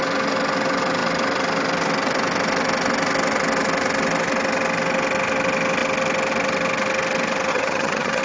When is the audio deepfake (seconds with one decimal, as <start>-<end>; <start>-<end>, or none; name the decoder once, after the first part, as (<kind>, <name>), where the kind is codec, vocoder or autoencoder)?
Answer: 7.5-8.2 (vocoder, HiFi-GAN)